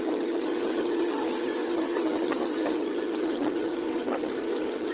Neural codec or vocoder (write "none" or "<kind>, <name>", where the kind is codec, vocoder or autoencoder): vocoder, HiFi-GAN